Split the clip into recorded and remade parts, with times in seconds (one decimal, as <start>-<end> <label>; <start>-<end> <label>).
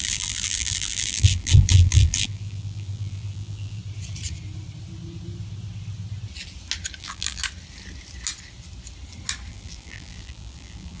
0.0-3.8 remade; 3.8-7.0 recorded; 7.0-7.4 remade; 7.4-9.5 recorded; 9.5-11.0 remade